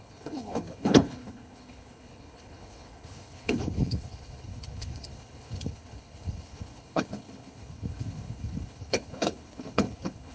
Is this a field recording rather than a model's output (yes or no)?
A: no